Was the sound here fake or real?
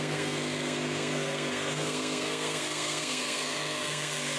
fake